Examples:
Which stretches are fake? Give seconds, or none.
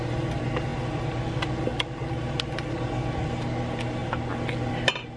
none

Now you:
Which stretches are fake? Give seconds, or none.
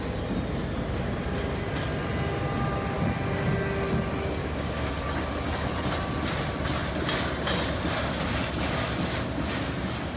4.4-4.9 (codec, DAC)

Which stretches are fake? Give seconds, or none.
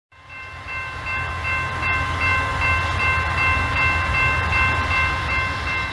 none